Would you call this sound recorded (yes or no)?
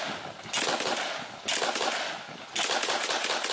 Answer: yes